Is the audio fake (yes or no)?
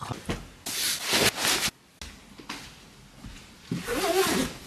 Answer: no